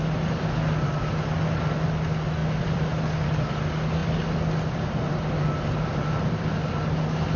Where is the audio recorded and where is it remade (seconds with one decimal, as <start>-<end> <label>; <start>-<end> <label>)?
0.0-2.4 recorded; 2.4-3.4 remade; 3.4-7.4 recorded